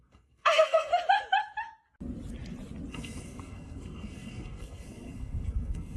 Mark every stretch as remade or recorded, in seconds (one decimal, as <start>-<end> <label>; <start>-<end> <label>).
0.0-0.9 remade; 0.9-2.9 recorded; 2.9-6.0 remade